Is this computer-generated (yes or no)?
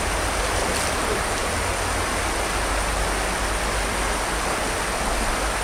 no